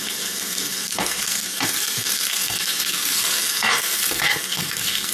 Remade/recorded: remade